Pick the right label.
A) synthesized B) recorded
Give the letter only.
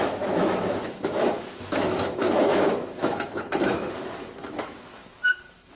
A